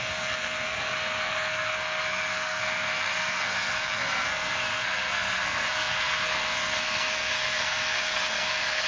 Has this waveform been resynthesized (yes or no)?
yes